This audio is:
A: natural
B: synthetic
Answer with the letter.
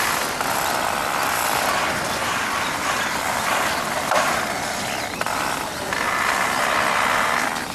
A